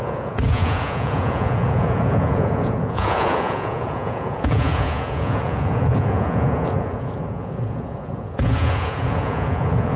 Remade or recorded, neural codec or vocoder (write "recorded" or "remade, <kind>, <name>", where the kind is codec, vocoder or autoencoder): remade, vocoder, Vocos